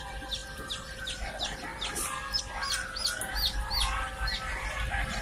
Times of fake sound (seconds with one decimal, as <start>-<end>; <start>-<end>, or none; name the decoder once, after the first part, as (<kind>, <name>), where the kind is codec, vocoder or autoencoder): none